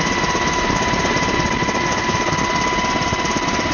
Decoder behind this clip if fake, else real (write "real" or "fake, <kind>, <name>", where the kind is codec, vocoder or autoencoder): real